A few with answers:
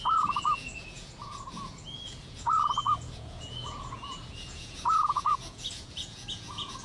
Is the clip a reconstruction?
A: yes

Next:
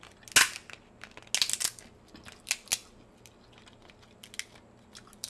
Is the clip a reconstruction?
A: no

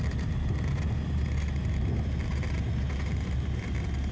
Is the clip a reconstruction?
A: no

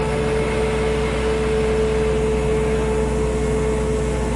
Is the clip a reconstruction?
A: no